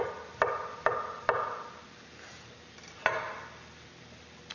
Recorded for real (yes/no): yes